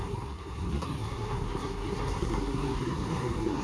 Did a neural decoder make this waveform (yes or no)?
yes